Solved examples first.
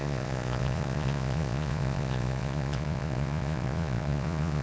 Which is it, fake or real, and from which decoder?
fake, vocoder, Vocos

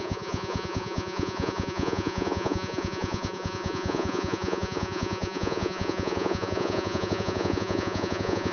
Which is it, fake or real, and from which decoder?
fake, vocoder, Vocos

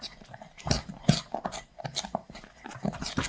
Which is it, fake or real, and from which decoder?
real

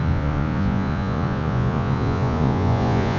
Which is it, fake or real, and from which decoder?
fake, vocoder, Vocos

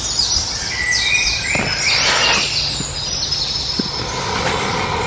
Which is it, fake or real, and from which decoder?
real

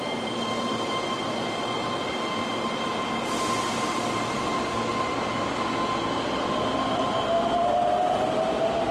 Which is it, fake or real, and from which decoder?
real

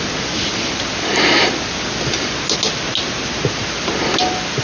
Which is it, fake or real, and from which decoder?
real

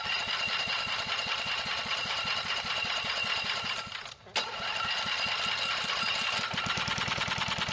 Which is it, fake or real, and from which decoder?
real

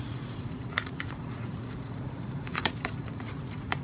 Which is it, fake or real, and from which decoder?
fake, vocoder, Vocos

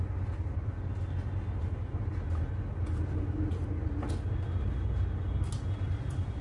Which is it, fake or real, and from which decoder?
real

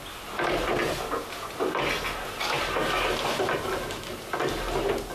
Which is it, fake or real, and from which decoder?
real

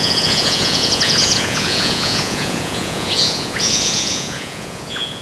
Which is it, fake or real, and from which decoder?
fake, vocoder, Vocos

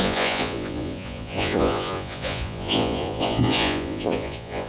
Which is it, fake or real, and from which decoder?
fake, vocoder, Vocos